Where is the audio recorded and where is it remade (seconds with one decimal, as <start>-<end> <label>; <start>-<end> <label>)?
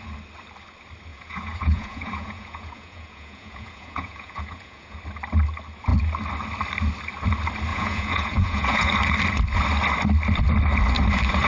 0.0-1.1 recorded; 1.1-5.0 remade; 5.0-7.7 recorded; 7.7-8.9 remade; 8.9-11.5 recorded